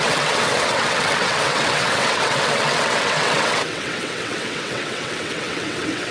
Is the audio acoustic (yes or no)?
no